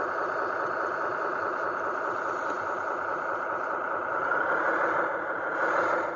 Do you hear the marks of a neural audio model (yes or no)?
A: no